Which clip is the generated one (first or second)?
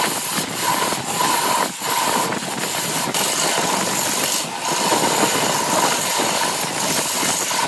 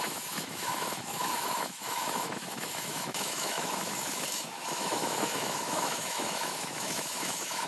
second